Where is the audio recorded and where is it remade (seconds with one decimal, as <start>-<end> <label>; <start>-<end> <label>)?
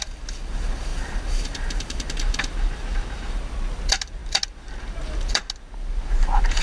0.0-6.6 recorded